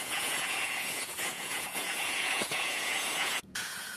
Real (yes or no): no